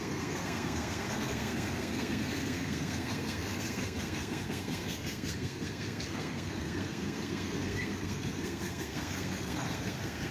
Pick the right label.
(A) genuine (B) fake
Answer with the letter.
B